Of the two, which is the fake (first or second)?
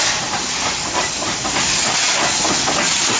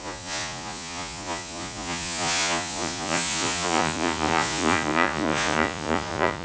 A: second